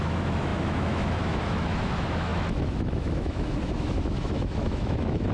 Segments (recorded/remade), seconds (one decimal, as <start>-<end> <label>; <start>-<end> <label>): 0.0-5.3 remade